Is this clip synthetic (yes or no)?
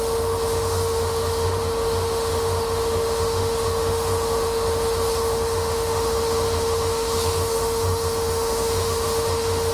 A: yes